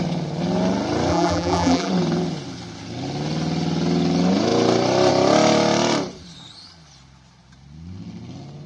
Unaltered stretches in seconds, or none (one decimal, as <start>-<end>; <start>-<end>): 0.0-1.1; 1.9-8.7